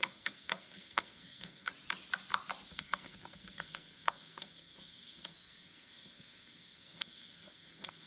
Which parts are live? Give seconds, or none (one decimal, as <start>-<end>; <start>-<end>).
1.7-2.7